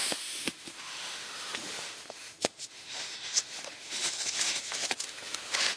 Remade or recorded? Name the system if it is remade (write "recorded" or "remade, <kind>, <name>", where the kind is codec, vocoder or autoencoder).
remade, autoencoder, DAC-VAE